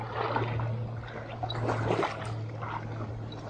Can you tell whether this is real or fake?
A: real